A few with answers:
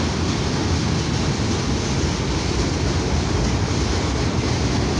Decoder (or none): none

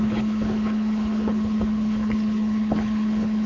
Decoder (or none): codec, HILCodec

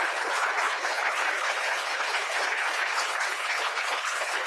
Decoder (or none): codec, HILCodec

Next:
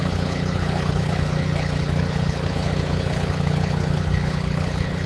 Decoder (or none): codec, HILCodec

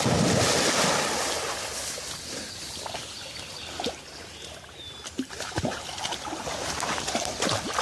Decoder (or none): none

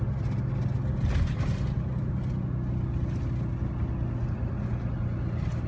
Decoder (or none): none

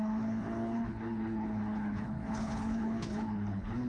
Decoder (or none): codec, HILCodec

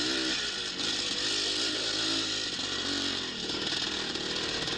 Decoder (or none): none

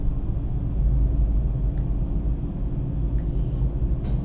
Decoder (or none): none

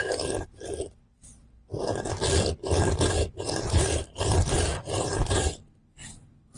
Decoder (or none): none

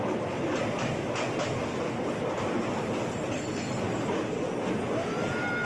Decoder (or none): none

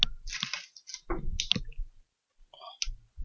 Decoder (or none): none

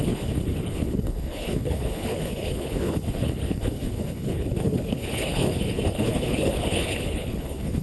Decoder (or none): codec, HILCodec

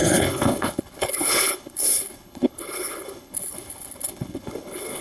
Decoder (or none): codec, HILCodec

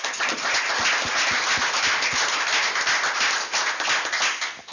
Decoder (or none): none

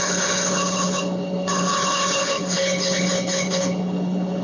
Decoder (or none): codec, HILCodec